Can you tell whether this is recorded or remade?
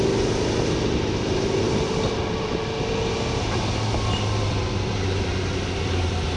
recorded